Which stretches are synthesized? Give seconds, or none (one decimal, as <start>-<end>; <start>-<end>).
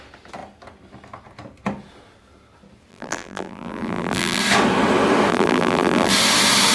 2.9-4.4; 5.3-6.1